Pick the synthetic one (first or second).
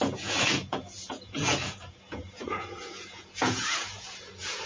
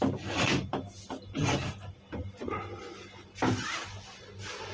first